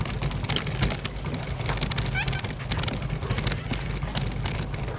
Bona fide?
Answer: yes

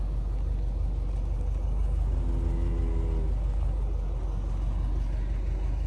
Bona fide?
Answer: yes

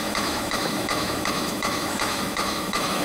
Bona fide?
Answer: no